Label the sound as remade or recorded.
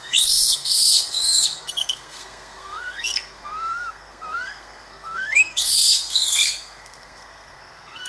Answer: remade